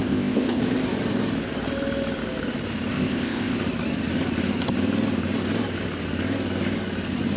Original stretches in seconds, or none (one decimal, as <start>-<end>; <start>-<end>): 0.6-2.9; 3.6-7.4

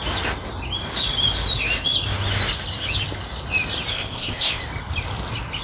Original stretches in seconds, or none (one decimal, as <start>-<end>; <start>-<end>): 0.0-3.9; 4.6-5.6

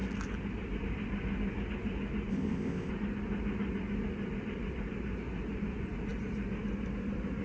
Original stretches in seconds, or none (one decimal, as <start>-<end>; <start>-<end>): 0.0-2.3; 2.9-7.4

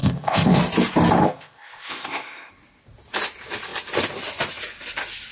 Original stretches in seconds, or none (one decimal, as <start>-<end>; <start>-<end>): 0.6-1.2; 2.5-5.3

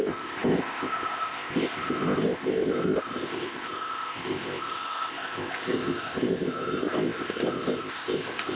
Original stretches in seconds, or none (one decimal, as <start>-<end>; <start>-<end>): none